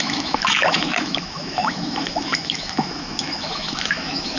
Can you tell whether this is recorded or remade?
remade